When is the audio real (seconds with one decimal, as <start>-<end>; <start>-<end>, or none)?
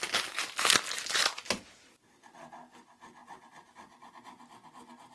0.0-3.2; 4.1-5.1